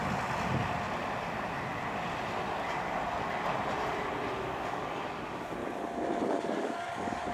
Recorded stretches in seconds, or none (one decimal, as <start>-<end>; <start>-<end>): 0.0-4.4; 5.6-6.2